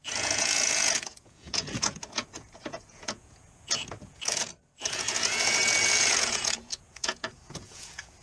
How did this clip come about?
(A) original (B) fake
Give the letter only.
B